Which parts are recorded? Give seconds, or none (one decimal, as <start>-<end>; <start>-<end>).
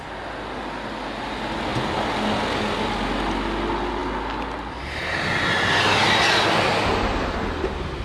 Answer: 0.0-8.0